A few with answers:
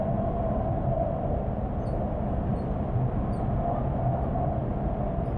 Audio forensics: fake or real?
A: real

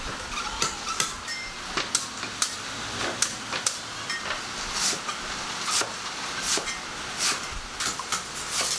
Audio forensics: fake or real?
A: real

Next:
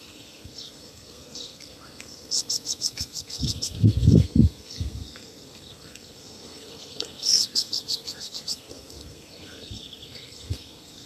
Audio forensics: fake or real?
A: fake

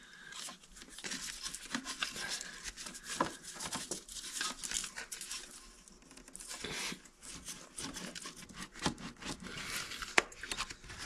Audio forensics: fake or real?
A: real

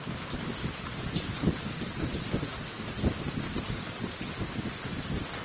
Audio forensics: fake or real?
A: real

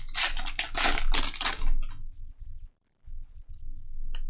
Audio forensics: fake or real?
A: real